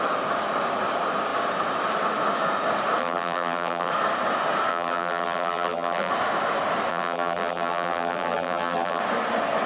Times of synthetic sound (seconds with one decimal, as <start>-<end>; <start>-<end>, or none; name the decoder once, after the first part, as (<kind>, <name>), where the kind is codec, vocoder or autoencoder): 3.0-3.9 (vocoder, BigVGAN v2); 4.7-6.1; 6.9-9.0